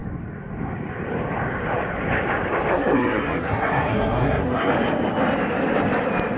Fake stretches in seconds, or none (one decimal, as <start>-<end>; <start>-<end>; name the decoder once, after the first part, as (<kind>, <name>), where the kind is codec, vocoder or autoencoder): 2.7-4.7 (codec, SNAC)